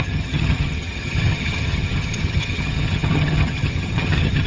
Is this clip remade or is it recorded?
remade